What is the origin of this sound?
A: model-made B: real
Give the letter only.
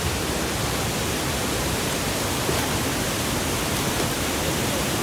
B